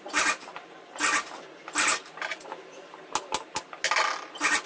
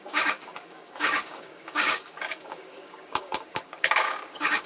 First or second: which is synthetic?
second